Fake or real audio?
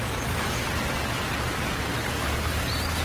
real